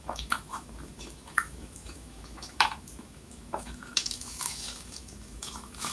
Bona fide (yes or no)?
no